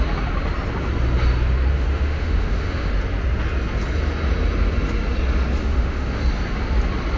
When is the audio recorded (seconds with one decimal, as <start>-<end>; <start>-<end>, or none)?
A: 0.0-1.7; 2.9-5.6; 6.2-7.2